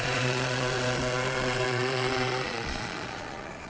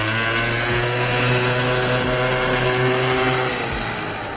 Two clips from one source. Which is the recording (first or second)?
second